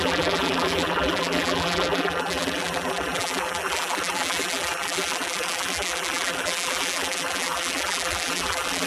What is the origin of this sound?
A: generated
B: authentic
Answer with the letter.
A